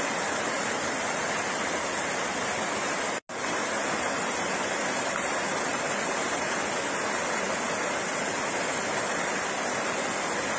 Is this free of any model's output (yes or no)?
yes